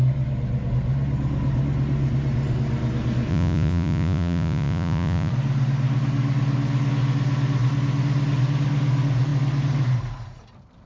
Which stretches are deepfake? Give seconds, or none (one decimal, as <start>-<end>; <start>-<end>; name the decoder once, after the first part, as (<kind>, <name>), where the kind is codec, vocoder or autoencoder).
3.3-5.3 (vocoder, Vocos)